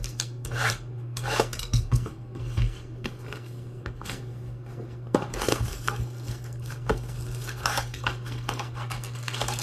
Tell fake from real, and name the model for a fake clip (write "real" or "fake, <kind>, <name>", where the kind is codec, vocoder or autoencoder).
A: fake, codec, SNAC